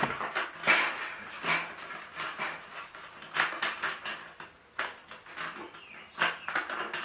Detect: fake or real real